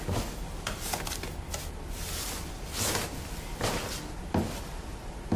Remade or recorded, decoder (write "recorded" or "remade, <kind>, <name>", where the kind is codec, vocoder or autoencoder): recorded